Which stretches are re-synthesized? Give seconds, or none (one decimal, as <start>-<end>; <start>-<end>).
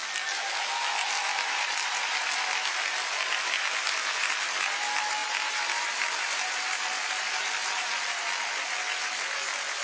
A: none